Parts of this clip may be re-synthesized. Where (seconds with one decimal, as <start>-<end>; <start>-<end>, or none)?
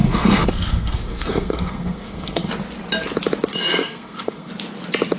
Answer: 0.0-2.5; 3.8-4.5